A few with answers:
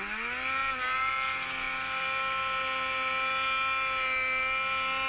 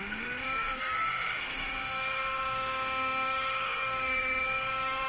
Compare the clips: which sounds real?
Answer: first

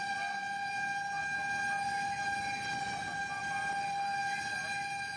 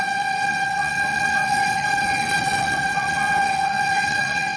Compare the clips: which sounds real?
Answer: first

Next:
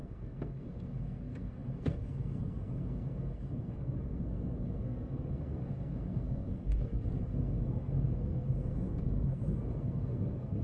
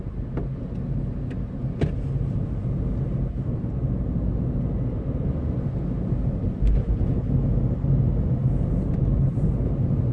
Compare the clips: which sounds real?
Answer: second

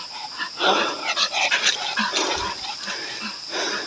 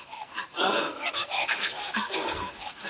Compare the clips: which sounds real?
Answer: first